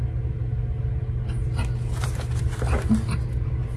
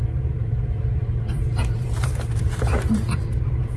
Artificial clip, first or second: second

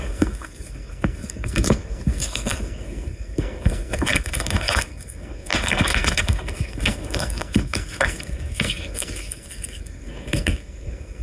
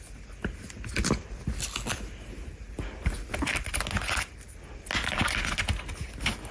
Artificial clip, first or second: first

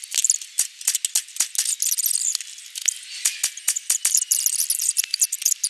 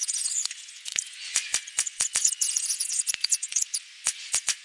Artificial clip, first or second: second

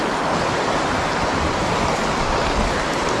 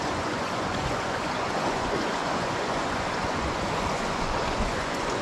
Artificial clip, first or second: second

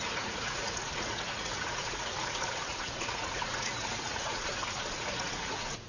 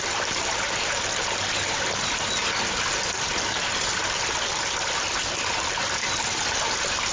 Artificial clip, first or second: first